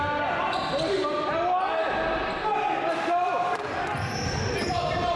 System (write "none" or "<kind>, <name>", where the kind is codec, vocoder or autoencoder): none